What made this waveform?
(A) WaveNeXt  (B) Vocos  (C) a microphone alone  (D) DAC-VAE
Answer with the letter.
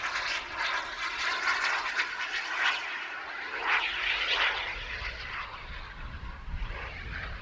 C